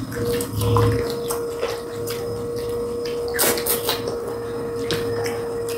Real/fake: real